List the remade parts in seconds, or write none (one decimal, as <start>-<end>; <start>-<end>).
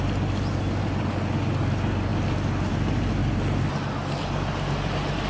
none